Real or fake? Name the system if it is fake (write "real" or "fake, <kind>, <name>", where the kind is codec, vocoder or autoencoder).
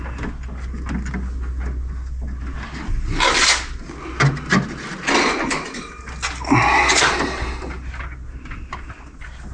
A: real